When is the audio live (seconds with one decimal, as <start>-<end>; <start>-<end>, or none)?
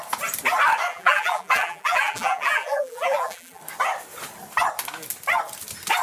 0.0-0.9; 3.6-6.0